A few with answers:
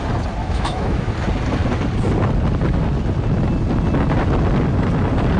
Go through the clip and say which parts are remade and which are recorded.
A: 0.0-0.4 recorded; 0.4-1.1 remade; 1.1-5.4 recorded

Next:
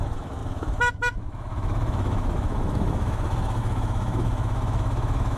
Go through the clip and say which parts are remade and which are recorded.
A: 0.0-5.4 remade

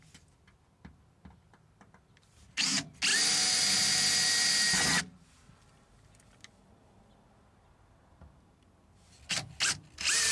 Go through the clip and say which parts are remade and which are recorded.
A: 0.0-10.3 recorded